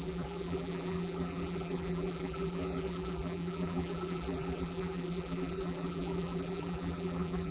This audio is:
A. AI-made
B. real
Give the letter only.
A